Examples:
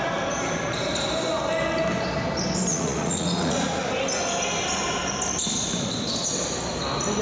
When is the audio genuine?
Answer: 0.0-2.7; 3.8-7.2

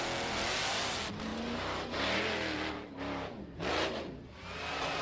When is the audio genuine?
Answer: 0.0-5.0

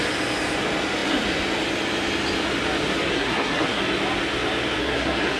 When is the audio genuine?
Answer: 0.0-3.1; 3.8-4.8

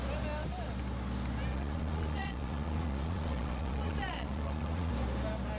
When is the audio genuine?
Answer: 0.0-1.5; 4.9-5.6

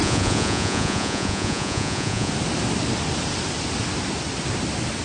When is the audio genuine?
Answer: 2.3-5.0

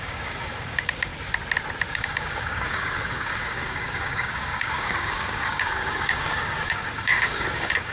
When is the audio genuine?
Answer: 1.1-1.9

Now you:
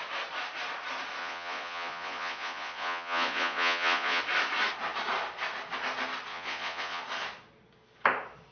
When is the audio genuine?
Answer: 0.0-1.2; 4.2-6.3; 7.0-8.5